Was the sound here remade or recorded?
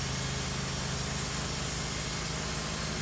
recorded